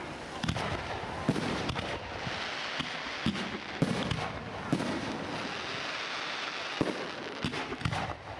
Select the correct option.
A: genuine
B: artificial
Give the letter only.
A